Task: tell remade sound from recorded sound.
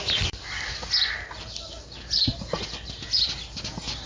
recorded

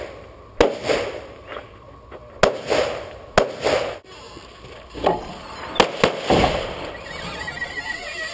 recorded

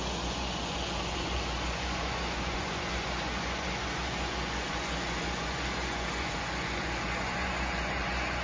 remade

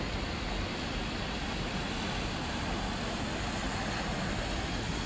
recorded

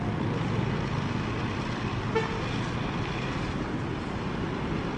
recorded